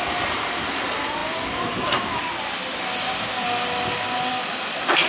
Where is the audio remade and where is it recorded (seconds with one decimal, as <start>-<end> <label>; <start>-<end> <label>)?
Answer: 0.0-5.1 recorded